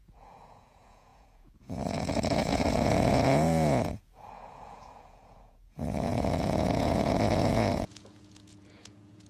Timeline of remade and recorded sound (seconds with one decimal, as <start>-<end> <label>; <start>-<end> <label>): 0.0-9.3 remade